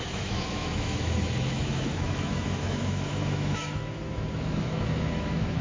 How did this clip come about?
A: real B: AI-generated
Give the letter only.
B